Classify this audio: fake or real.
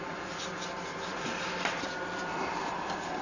real